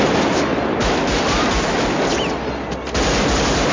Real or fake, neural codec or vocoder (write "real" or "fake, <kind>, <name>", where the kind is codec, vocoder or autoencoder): real